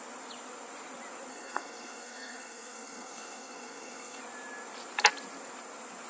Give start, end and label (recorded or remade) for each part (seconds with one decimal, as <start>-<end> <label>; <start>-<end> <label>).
0.0-1.3 recorded; 1.3-4.2 remade; 4.2-6.1 recorded